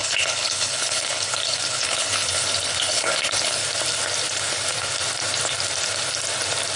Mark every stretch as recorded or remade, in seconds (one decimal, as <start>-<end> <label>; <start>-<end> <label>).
0.0-3.6 remade; 3.6-6.8 recorded